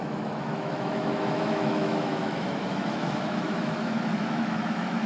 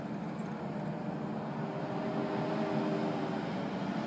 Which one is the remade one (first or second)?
first